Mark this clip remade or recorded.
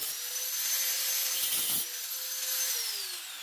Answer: recorded